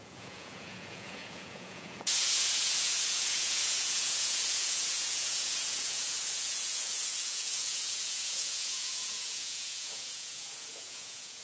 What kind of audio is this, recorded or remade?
remade